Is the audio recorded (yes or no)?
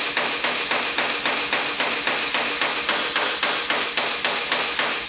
yes